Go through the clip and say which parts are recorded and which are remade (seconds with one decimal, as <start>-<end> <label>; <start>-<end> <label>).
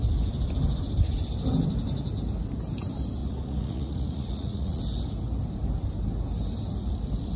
0.0-3.2 recorded; 3.2-4.8 remade; 4.8-7.4 recorded